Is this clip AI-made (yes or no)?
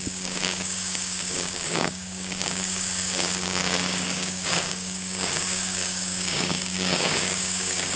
yes